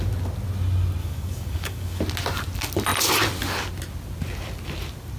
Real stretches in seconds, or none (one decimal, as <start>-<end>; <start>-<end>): 0.0-1.0; 2.0-5.2